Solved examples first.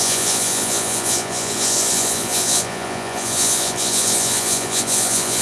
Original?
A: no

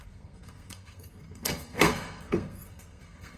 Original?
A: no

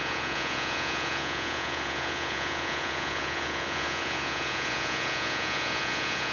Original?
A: no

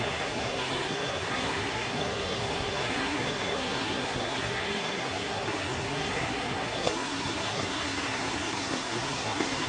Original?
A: no